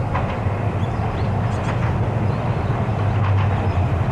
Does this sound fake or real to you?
real